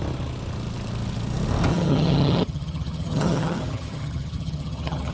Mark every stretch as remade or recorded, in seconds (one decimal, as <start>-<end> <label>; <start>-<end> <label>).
0.0-1.7 recorded; 1.7-5.1 remade